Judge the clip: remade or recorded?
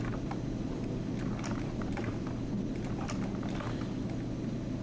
recorded